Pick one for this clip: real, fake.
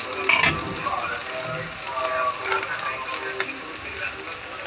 real